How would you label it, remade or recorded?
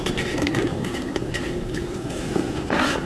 remade